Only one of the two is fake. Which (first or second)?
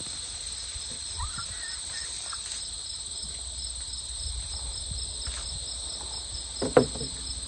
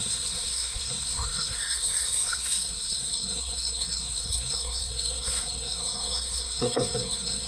second